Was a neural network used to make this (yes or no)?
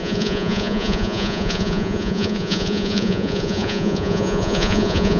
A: yes